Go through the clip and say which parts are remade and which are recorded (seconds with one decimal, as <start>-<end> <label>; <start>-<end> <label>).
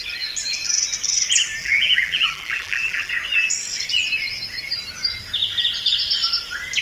0.0-1.6 recorded; 1.6-3.1 remade; 3.1-6.8 recorded